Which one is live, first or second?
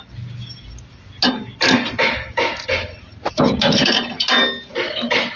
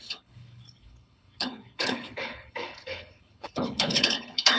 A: first